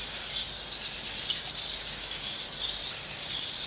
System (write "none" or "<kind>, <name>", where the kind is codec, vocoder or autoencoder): none